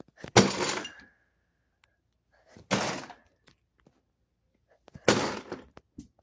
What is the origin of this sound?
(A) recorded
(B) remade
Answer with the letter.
A